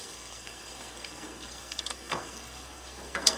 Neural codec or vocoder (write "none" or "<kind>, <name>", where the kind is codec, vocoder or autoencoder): codec, SNAC